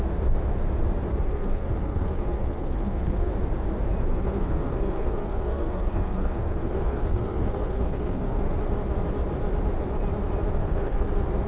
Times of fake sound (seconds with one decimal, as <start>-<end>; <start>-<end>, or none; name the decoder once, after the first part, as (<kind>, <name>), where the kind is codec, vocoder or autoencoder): 1.1-3.3 (codec, SNAC); 4.1-8.4; 10.6-11.1